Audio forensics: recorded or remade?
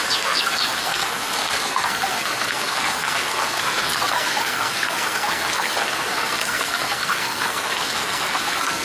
remade